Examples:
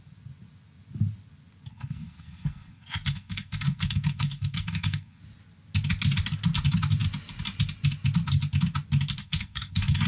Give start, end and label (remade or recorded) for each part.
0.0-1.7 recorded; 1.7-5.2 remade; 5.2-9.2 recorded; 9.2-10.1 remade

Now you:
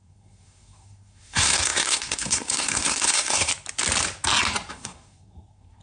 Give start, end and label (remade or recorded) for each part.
0.0-3.5 remade; 3.5-4.7 recorded; 4.7-5.8 remade